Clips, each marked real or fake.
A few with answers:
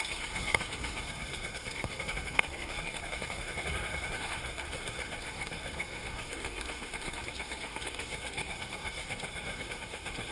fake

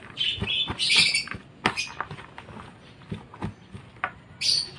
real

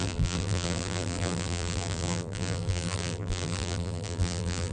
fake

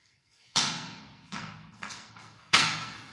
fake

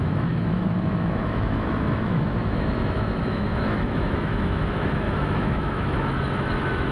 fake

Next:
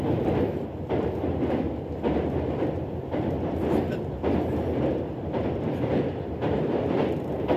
fake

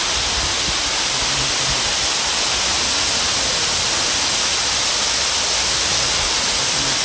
real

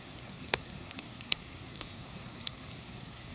fake